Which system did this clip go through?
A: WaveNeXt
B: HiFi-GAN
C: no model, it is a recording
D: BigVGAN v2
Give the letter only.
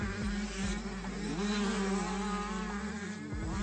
C